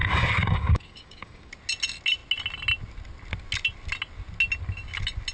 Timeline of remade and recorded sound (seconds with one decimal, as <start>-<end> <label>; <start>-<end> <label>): 0.0-1.5 remade; 1.5-5.3 recorded